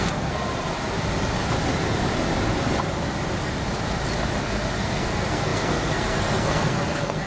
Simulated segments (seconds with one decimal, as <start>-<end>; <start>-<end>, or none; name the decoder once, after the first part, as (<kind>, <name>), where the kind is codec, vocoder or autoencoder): 0.0-0.5 (codec, SNAC); 4.4-7.3